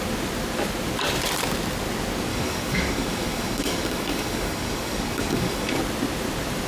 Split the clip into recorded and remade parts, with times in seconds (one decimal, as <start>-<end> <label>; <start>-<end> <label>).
0.0-2.3 recorded; 2.3-5.8 remade; 5.8-6.7 recorded